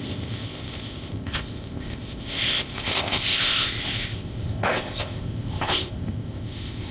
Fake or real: fake